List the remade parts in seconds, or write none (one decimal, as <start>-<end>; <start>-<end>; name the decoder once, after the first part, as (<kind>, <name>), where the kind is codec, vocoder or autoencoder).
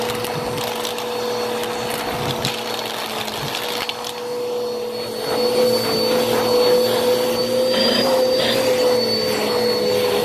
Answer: none